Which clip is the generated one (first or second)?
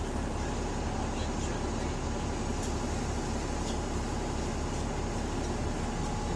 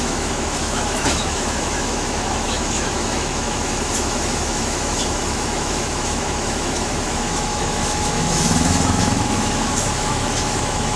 second